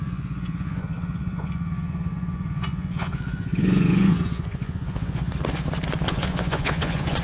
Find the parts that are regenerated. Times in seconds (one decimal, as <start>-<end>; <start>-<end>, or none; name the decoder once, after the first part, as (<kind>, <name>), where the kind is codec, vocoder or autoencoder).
0.0-5.3 (vocoder, Vocos); 6.1-7.2